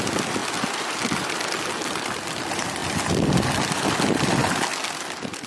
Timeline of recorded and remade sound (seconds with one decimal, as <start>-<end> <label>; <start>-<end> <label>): 0.0-0.4 remade; 0.4-1.2 recorded; 1.2-4.4 remade; 4.4-5.0 recorded; 5.0-5.5 remade